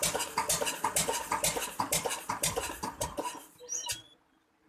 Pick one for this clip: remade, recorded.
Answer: recorded